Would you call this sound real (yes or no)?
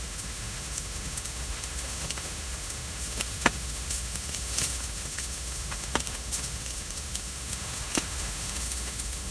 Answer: no